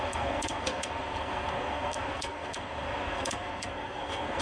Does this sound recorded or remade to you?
remade